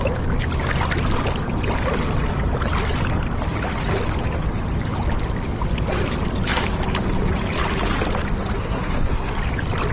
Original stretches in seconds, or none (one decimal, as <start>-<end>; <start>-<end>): 0.0-8.6; 9.3-9.9